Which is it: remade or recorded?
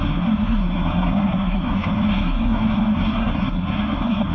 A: remade